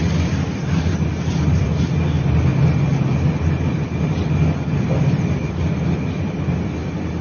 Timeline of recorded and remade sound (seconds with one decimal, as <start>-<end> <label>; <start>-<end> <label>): 0.0-2.5 remade; 2.5-5.0 recorded; 5.0-7.2 remade